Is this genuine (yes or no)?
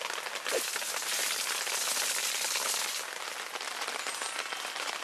yes